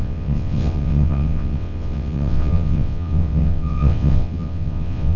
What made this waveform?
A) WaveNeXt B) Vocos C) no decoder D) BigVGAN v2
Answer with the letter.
A